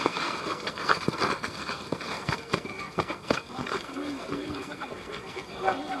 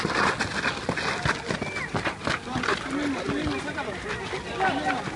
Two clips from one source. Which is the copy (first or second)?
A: first